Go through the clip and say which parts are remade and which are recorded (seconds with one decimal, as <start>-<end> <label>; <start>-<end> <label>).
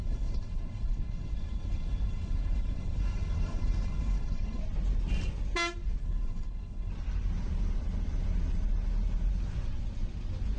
0.0-4.6 remade; 4.6-6.0 recorded; 6.0-6.9 remade; 6.9-10.6 recorded